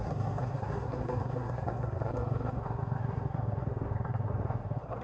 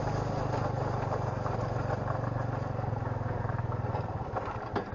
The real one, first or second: second